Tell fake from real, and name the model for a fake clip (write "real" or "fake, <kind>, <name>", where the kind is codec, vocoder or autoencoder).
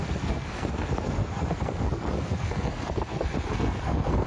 fake, codec, SNAC